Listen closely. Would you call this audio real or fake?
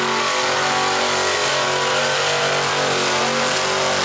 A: real